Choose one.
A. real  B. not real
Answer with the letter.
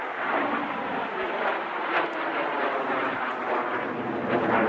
A